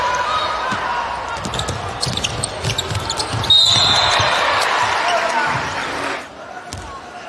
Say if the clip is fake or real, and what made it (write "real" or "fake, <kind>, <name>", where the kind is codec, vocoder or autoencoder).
real